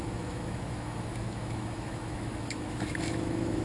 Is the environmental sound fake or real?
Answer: fake